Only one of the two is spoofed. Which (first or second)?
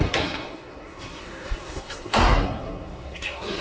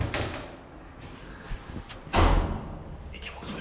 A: first